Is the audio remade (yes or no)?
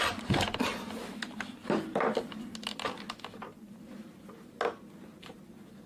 no